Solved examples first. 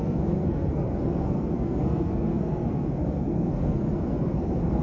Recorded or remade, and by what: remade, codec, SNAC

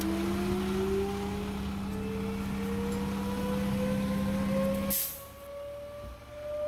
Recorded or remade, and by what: recorded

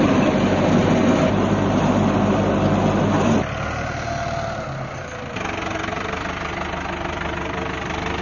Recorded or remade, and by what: recorded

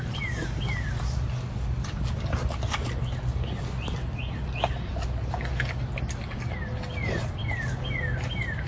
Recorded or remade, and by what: recorded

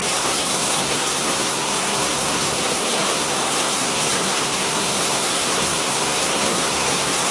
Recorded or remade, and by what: remade, codec, SNAC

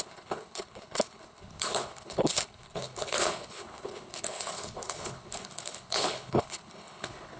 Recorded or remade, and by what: remade, codec, HILCodec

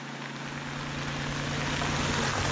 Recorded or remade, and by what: recorded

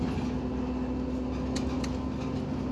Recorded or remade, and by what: recorded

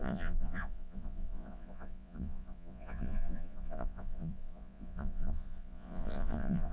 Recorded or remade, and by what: remade, vocoder, Vocos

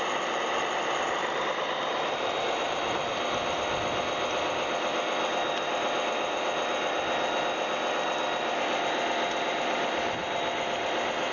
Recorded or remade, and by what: recorded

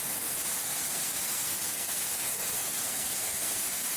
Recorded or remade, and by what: remade, codec, SNAC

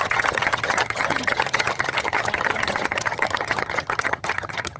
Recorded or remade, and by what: remade, vocoder, HiFi-GAN